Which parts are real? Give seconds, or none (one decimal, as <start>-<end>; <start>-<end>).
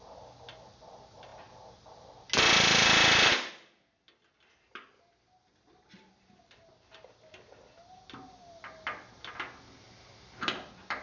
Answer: 0.0-11.0